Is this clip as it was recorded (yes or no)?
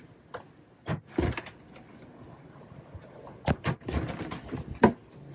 yes